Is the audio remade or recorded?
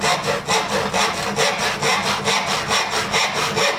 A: recorded